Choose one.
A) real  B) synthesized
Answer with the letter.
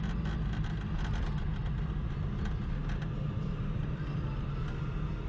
A